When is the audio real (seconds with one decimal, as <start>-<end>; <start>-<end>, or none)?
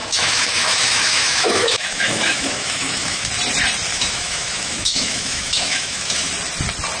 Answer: 3.3-3.9; 6.3-7.0